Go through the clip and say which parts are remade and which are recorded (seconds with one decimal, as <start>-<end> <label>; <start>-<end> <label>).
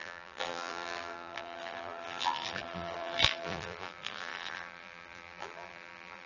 0.0-6.3 remade